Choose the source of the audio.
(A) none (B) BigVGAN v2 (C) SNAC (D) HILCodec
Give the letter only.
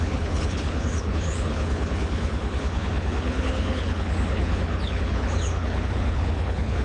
D